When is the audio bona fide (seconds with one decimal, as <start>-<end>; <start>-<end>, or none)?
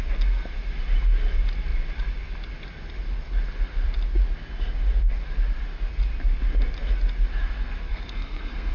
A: 0.0-7.9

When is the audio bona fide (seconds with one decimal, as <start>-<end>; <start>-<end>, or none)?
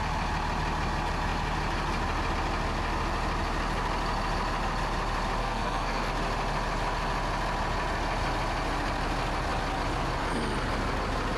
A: 0.0-5.4; 6.1-11.4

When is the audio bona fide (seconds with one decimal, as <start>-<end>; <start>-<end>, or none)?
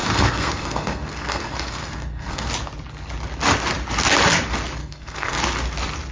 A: 2.5-4.8; 5.4-6.1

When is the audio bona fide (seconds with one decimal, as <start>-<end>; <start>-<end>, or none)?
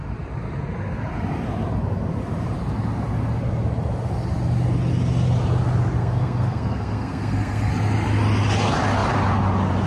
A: 0.0-6.0; 7.7-9.9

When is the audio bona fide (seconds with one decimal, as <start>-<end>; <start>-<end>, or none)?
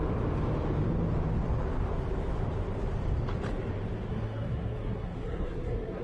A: 0.0-4.1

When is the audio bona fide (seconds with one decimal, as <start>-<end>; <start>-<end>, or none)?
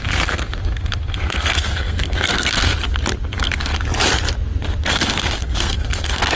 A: 2.7-3.3; 3.7-4.9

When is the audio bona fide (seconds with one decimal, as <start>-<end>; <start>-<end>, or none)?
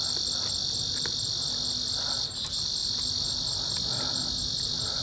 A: 0.0-5.0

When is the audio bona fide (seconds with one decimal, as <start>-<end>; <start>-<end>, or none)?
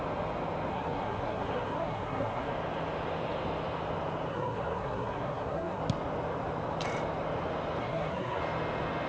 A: 0.0-0.7; 2.5-4.3; 5.8-7.8; 8.4-9.1